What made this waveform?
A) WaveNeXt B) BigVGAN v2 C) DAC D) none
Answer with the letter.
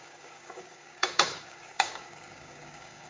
C